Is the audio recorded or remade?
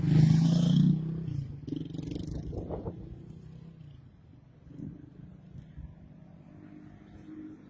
recorded